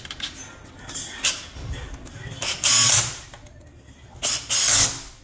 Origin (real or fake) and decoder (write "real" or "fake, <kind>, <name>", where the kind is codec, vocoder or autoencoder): real